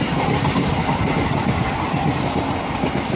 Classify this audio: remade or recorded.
recorded